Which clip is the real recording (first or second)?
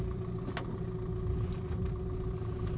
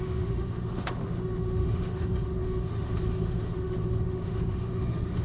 first